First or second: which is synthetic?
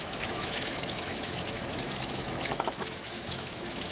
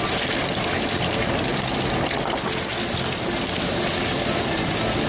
first